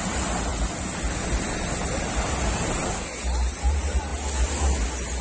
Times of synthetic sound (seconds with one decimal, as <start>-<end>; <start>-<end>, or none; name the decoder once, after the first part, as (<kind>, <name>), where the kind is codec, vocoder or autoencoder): none